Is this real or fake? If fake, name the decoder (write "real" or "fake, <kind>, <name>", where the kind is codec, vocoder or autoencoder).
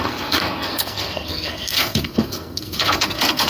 fake, codec, SNAC